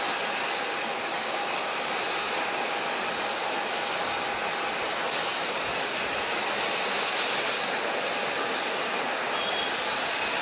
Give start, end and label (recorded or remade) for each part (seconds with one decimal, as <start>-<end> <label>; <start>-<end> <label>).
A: 0.0-1.1 recorded; 1.1-1.9 remade; 1.9-10.4 recorded